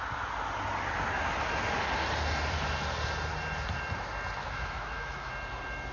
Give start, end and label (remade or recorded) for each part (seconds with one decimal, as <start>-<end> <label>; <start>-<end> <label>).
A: 0.0-4.4 recorded; 4.4-5.3 remade; 5.3-5.9 recorded